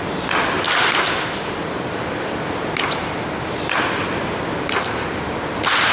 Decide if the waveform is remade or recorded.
recorded